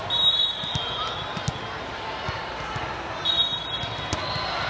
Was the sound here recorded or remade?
recorded